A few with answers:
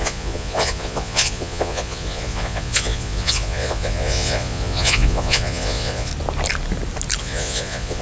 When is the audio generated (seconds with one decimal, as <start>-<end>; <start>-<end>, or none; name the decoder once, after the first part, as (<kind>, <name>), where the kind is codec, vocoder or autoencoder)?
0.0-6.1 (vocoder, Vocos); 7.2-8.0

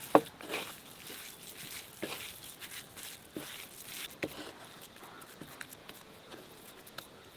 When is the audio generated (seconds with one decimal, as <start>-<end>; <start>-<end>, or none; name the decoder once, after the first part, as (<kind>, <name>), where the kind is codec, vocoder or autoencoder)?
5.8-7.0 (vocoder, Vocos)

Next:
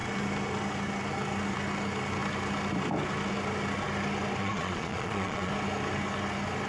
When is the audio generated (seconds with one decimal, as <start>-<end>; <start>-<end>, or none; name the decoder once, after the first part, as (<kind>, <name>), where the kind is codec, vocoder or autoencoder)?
4.4-5.5 (vocoder, Vocos)

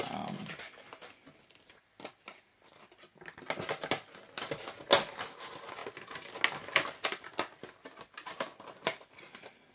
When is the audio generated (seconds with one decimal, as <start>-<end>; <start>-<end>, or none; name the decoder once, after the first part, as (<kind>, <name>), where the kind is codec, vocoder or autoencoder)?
none

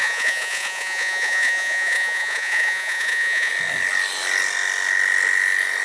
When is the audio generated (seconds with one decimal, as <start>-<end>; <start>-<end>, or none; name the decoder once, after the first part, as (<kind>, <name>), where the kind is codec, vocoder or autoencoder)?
0.0-3.5 (vocoder, Vocos)